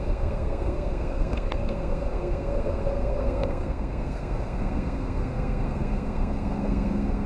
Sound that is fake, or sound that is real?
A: fake